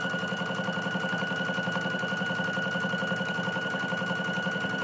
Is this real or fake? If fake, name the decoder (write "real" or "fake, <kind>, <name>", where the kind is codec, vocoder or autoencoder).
real